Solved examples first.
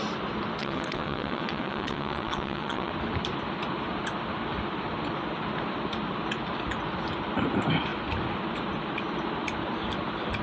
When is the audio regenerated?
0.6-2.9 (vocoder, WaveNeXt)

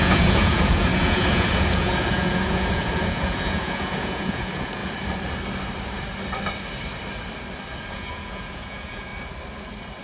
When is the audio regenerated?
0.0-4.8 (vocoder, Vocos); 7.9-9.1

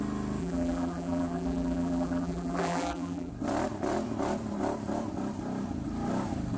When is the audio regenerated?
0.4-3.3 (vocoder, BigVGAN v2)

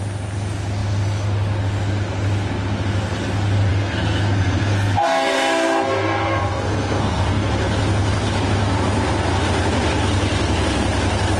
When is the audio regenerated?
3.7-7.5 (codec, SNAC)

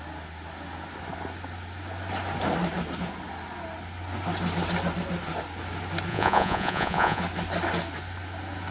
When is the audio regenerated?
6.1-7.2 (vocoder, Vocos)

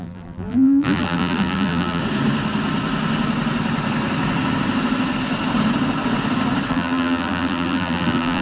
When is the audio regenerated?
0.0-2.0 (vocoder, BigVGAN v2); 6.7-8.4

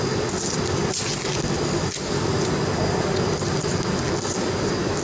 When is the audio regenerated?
none